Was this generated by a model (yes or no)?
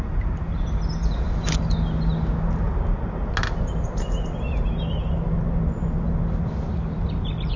no